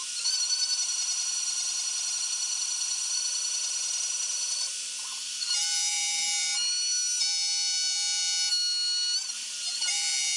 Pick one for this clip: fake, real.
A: real